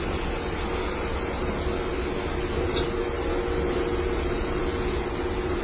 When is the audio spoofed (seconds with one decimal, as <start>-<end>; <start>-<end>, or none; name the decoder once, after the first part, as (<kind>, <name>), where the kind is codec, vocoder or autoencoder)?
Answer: none

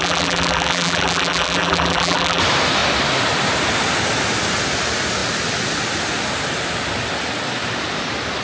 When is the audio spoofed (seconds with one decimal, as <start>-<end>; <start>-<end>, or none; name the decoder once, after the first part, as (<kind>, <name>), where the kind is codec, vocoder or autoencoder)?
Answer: 0.0-2.4 (vocoder, BigVGAN v2)

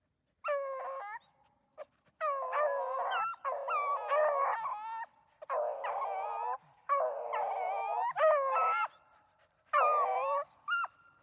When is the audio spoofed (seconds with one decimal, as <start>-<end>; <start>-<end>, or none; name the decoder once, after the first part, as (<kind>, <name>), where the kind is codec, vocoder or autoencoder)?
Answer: none

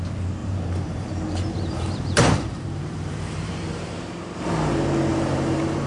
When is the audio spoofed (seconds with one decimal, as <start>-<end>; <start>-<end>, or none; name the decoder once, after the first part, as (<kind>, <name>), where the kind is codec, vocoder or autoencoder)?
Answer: 0.4-3.9 (vocoder, BigVGAN v2); 5.1-5.9

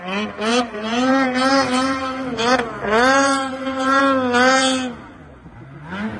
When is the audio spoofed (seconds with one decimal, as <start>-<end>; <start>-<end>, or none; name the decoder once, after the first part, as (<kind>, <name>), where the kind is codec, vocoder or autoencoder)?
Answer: 0.5-4.0 (vocoder, BigVGAN v2)